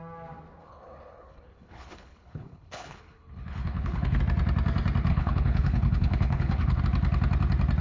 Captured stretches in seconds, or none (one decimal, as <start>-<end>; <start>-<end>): 0.0-0.6; 4.2-5.1; 6.8-7.8